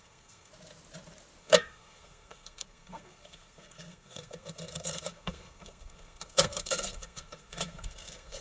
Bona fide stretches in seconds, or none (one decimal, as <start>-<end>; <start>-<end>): 0.5-1.4